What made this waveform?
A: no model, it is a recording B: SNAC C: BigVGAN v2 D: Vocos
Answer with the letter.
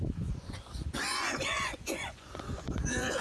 D